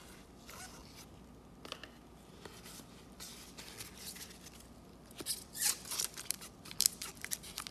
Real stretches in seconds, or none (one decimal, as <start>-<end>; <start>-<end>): 0.8-5.4